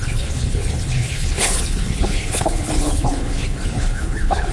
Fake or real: fake